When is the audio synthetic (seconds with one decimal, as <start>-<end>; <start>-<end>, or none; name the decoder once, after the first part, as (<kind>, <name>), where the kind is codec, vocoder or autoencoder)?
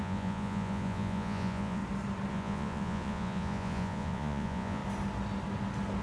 0.0-1.8 (vocoder, Vocos); 2.3-4.8